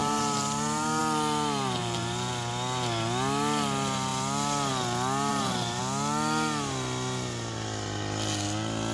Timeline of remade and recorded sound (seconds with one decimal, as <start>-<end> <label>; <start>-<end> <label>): 0.0-1.0 remade; 1.0-1.8 recorded; 1.8-2.3 remade; 2.3-5.3 recorded; 5.3-5.8 remade; 5.8-8.9 recorded

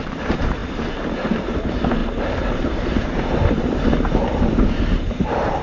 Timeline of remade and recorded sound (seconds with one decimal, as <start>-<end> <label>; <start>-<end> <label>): 0.0-5.6 remade

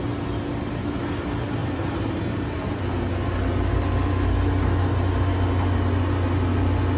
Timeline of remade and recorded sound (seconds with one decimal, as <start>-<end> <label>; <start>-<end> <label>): 0.0-1.6 recorded; 1.6-2.8 remade; 2.8-7.0 recorded

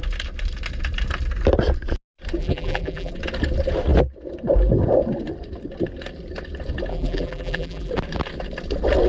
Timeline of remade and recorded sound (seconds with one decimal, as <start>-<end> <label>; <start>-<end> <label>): 0.0-2.4 recorded; 2.4-3.1 remade; 3.1-6.9 recorded; 6.9-7.9 remade; 7.9-9.1 recorded

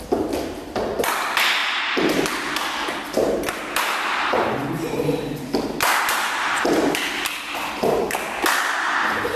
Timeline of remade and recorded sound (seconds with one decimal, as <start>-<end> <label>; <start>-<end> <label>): 0.0-9.4 recorded

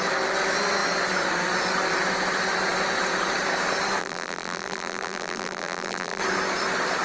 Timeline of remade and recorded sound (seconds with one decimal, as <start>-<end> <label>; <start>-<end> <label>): 0.0-4.0 recorded; 4.0-6.2 remade; 6.2-7.0 recorded